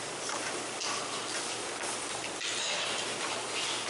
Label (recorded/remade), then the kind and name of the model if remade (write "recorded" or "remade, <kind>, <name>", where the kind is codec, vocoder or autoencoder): recorded